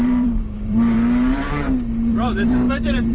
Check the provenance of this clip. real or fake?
fake